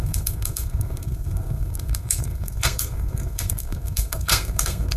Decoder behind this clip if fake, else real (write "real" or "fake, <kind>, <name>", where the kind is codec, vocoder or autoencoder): fake, codec, SNAC